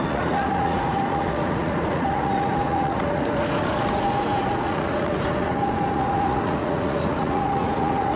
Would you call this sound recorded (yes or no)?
no